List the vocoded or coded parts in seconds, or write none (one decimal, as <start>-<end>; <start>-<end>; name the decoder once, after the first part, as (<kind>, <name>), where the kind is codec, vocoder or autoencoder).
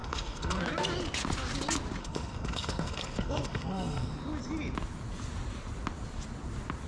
0.0-0.6 (codec, SNAC); 2.0-4.1